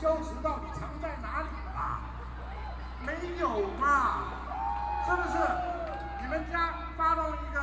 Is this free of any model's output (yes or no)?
yes